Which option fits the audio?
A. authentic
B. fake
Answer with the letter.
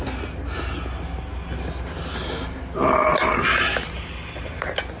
A